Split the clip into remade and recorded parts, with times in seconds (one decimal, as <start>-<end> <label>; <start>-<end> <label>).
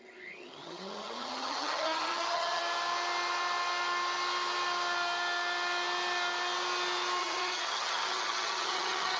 0.0-2.6 remade; 2.6-7.2 recorded; 7.2-9.2 remade